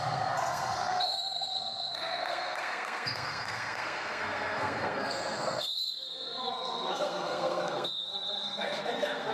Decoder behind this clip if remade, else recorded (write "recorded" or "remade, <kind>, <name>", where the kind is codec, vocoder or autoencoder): remade, codec, SNAC